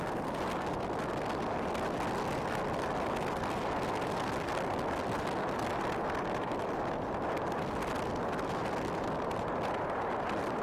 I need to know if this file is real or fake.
real